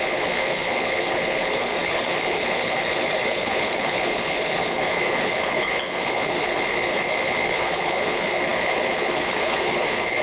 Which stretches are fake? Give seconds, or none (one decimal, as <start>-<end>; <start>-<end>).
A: 0.0-10.2